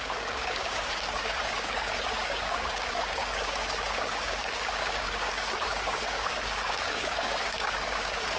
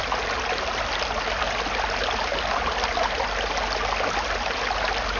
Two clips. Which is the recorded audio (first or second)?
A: second